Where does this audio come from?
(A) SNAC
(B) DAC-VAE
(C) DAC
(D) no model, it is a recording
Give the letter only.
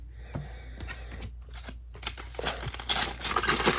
D